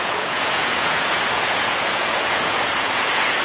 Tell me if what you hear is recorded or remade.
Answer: remade